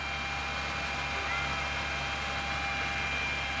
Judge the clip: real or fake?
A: real